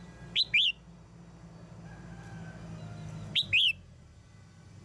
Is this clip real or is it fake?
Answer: real